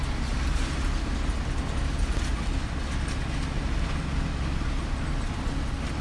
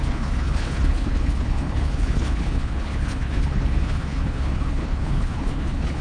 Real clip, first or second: first